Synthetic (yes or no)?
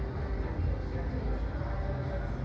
no